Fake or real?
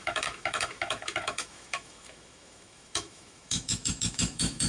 fake